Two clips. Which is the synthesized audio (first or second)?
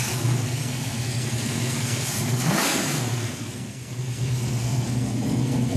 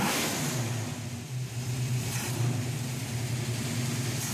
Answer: first